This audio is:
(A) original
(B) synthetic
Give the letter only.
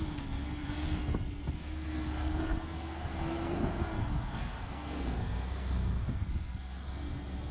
B